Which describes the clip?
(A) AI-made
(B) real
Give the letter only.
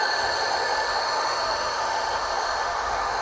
A